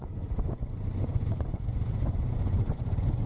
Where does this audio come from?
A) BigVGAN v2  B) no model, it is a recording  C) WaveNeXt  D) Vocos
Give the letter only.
D